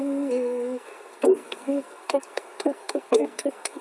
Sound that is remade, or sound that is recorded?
remade